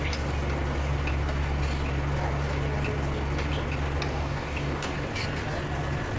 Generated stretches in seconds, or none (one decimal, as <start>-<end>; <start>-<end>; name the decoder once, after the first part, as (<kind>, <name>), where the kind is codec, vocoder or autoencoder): 4.1-4.9 (codec, DAC)